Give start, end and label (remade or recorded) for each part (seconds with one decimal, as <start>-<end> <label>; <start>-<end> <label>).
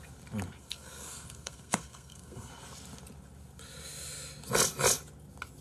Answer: 0.0-0.6 recorded; 0.6-2.5 remade; 2.5-5.6 recorded